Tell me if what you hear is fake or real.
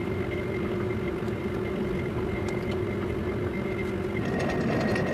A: real